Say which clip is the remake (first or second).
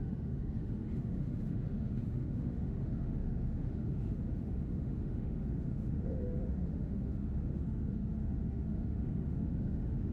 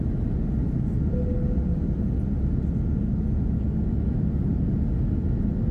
first